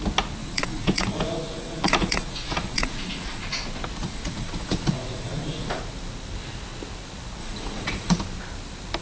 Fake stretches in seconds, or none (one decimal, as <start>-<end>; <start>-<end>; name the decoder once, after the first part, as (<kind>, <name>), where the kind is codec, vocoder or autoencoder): 0.4-3.4 (vocoder, Vocos); 4.0-5.8; 7.4-8.2